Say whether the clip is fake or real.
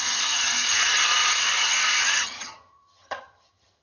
fake